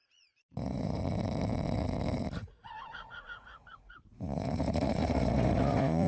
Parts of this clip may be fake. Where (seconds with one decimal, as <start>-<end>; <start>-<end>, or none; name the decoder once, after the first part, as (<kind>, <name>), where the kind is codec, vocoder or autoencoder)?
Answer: 0.0-1.0 (vocoder, Vocos); 2.4-6.1